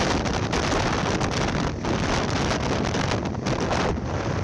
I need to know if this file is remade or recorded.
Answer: recorded